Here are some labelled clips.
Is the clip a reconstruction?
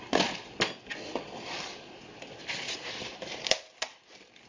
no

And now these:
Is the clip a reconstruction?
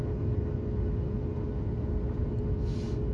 no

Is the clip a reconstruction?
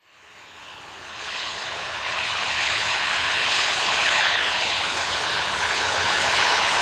yes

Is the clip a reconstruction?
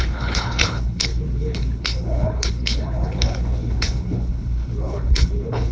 yes